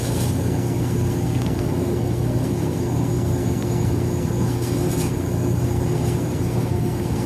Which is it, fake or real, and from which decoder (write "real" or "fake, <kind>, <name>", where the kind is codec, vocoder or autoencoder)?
fake, codec, SNAC